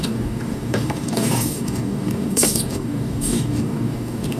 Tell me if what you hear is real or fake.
fake